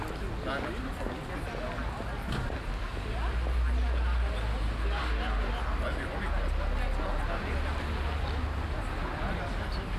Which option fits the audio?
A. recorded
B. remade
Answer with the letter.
A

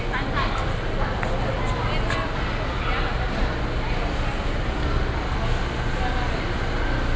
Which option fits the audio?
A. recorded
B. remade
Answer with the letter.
A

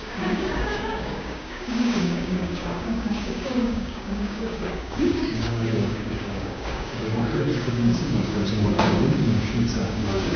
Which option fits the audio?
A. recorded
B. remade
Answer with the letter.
B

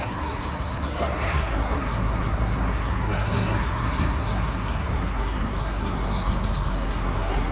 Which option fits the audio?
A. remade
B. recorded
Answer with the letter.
A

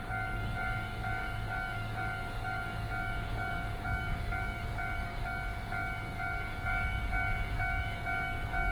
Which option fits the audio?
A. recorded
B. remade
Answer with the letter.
B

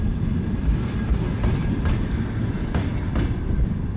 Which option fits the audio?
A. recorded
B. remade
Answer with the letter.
B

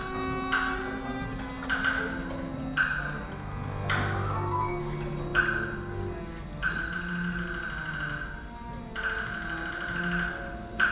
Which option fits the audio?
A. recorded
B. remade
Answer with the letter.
A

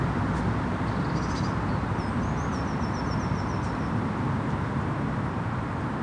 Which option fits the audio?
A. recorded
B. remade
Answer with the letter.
A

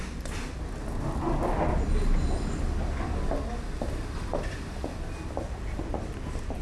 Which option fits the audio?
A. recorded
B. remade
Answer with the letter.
A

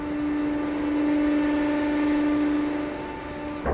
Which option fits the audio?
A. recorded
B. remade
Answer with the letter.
A